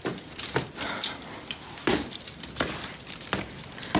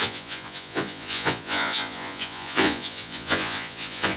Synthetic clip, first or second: second